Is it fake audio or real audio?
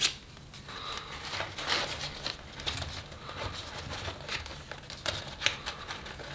real